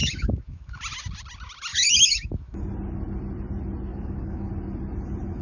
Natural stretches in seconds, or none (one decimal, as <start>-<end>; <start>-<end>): 0.8-1.7; 2.6-3.9; 4.5-5.4